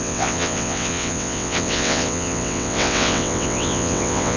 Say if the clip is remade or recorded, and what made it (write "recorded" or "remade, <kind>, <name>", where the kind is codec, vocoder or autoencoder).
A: remade, vocoder, WaveNeXt